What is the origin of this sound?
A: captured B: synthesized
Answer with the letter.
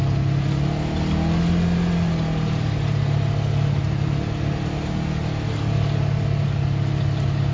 A